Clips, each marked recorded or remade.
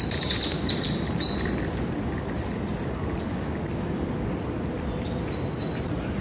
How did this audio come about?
recorded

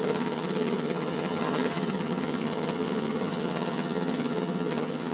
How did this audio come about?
remade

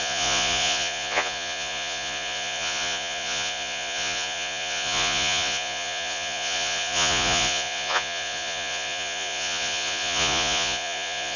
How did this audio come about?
remade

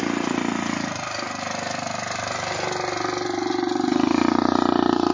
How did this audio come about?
recorded